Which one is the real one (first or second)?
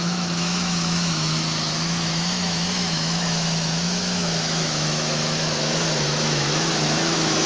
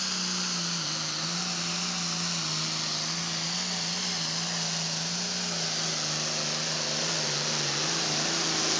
second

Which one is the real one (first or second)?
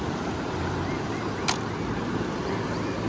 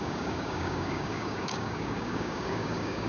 first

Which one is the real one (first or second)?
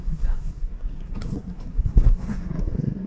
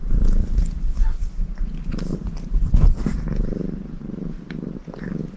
second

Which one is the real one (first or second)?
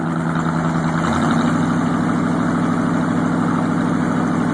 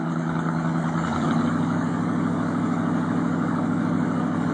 first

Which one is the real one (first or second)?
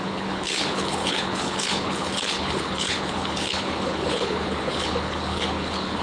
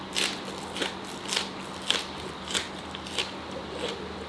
second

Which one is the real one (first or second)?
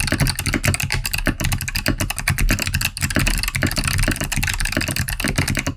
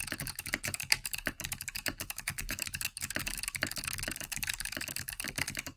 first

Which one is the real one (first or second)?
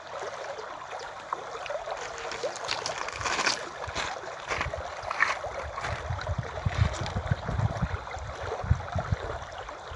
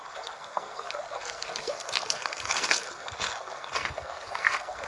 first